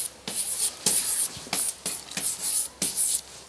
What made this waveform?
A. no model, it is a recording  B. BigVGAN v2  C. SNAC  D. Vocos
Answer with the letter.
A